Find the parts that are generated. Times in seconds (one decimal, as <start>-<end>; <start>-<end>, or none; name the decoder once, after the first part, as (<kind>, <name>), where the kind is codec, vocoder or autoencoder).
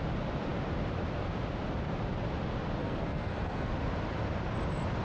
2.8-3.7 (codec, SNAC)